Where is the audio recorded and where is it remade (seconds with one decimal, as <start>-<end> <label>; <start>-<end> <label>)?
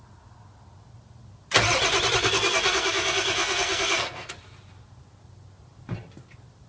0.0-2.2 recorded; 2.2-4.3 remade; 4.3-6.7 recorded